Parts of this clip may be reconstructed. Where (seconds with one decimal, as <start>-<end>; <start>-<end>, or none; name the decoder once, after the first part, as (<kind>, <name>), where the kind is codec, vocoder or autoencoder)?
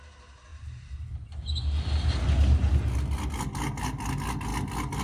none